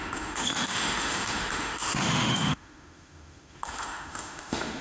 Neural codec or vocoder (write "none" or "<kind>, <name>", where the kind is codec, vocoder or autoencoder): autoencoder, DAC-VAE